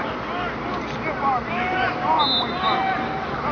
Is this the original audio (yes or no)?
yes